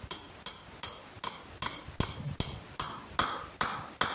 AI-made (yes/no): no